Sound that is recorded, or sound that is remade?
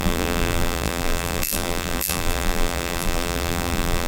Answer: remade